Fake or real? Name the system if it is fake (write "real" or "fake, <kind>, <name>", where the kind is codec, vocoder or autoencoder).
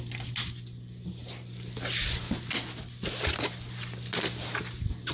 real